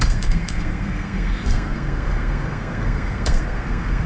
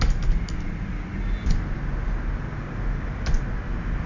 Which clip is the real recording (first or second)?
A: second